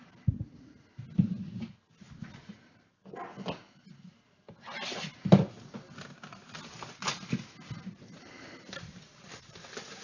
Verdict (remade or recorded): recorded